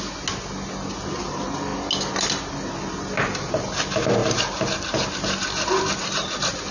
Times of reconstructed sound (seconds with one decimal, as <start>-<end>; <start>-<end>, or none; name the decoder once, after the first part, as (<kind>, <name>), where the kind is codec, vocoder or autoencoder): none